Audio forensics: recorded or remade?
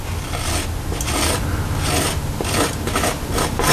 recorded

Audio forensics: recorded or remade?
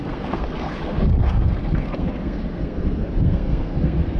remade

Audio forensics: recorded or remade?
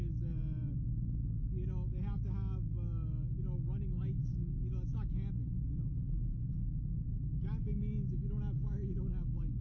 recorded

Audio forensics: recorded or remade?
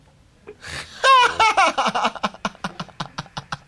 recorded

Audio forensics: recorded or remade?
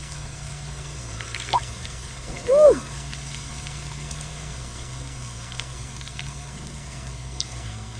remade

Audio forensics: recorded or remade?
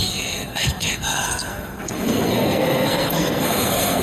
remade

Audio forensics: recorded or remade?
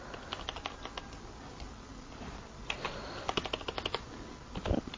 recorded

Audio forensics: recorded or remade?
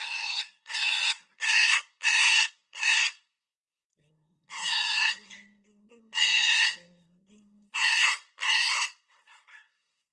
remade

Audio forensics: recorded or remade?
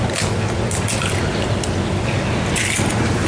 recorded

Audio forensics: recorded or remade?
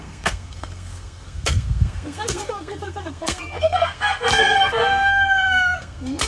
remade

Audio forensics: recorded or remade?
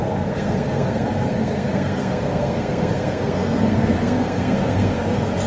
remade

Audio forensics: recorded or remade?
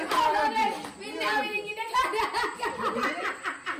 recorded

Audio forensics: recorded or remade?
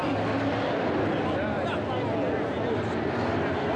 recorded